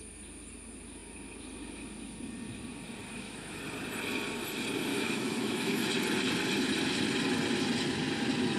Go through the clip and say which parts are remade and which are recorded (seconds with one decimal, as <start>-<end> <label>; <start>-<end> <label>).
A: 0.0-3.1 recorded; 3.1-3.6 remade; 3.6-4.9 recorded; 4.9-5.9 remade; 5.9-8.6 recorded